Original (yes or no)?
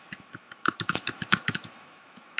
no